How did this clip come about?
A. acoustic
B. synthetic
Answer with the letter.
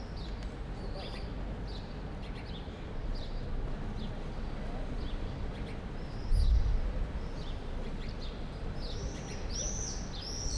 A